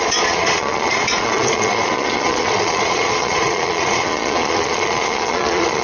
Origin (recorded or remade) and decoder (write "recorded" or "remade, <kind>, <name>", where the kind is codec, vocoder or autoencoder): remade, vocoder, Vocos